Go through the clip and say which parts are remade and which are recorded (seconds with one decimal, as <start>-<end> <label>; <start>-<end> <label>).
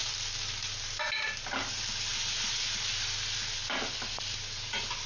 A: 0.0-5.1 recorded